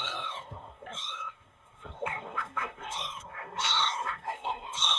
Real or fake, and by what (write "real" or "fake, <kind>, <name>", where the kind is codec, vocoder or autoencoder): fake, codec, SNAC